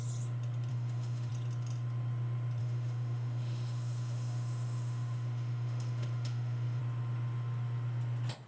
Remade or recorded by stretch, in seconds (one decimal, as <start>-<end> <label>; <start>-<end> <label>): 0.0-0.7 recorded; 0.7-1.3 remade; 1.3-2.6 recorded; 2.6-6.8 remade; 6.8-8.5 recorded